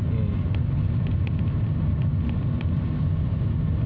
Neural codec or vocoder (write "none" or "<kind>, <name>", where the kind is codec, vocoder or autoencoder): none